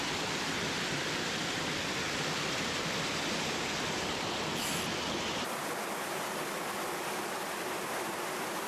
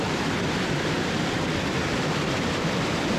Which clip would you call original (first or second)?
first